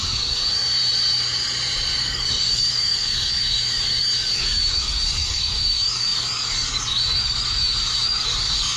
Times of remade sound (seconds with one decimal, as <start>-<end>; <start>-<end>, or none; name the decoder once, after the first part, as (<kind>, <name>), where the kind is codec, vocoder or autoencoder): 0.0-0.4 (codec, DAC); 2.0-8.8